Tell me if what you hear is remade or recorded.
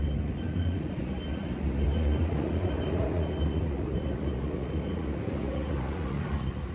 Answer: remade